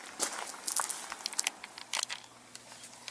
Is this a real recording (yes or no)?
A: yes